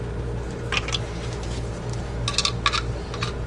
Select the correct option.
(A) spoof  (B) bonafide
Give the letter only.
B